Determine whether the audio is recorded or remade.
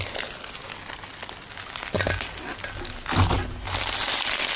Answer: recorded